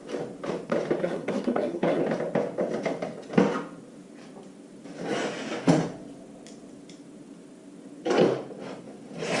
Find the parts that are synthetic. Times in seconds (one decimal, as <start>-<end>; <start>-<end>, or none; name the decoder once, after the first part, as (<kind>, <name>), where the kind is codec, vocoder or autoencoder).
1.0-2.0 (codec, SNAC)